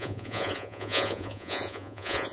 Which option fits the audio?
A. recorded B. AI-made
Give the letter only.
B